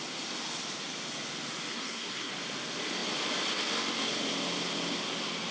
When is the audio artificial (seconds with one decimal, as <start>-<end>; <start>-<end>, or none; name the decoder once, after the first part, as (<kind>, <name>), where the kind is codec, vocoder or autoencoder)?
1.7-2.3 (codec, SNAC)